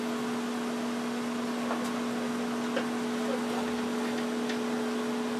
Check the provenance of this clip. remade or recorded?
recorded